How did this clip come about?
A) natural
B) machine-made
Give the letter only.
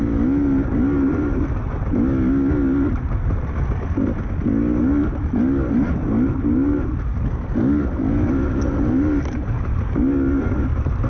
A